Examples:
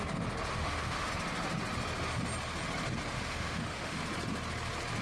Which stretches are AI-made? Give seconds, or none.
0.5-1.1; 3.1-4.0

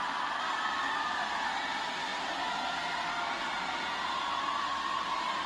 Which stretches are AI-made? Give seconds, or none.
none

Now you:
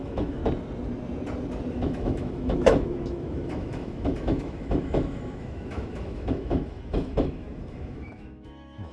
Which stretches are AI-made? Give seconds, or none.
0.0-0.4; 1.7-8.9

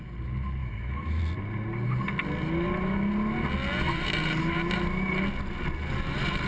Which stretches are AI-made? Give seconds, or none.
0.6-1.2

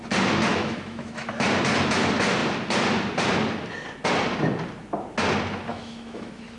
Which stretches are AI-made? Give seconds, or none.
0.5-1.2; 5.7-6.6